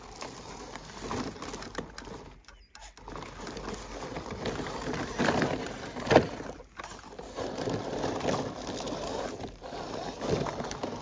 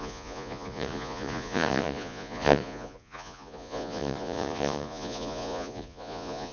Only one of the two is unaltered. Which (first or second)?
first